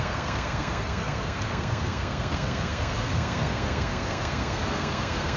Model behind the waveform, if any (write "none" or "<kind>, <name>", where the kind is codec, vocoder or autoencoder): codec, SNAC